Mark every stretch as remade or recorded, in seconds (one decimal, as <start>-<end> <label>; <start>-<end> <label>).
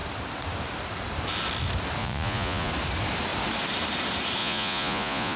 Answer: 0.0-2.0 recorded; 2.0-2.7 remade; 2.7-4.4 recorded; 4.4-5.4 remade